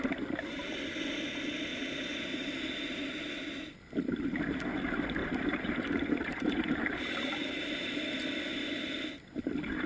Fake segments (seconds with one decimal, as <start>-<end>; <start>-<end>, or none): 1.7-2.5; 5.2-8.0